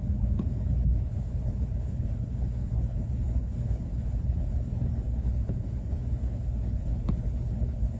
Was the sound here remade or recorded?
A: remade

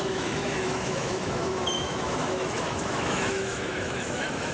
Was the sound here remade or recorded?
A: remade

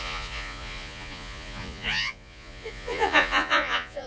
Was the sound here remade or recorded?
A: remade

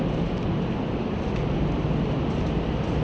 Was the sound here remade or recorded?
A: recorded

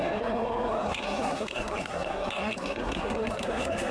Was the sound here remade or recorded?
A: remade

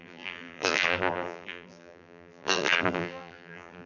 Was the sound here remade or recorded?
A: remade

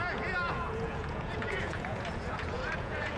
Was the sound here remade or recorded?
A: remade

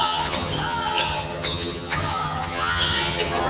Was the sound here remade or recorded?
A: remade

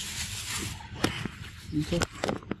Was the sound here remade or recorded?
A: recorded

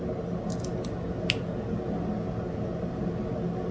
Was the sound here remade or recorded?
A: recorded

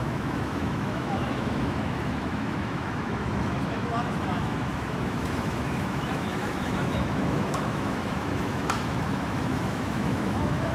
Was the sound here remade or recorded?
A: remade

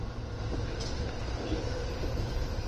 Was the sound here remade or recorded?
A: remade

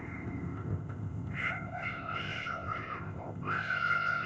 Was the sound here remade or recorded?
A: remade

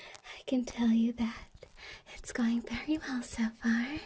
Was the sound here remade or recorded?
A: recorded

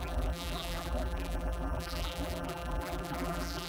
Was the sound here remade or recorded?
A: remade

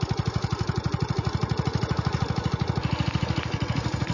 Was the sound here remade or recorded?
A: recorded